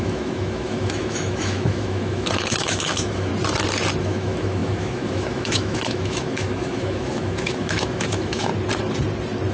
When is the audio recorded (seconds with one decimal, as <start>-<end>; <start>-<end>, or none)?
3.3-4.0; 8.5-9.5